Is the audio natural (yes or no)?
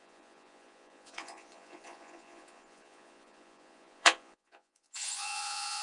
no